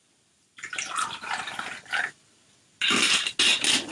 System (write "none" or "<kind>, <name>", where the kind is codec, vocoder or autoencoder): none